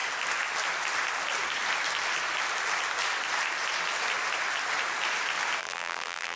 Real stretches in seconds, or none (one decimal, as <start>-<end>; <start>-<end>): 0.0-5.6